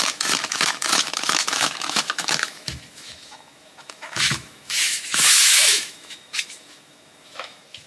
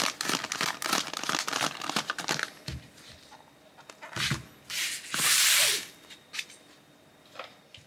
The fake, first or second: first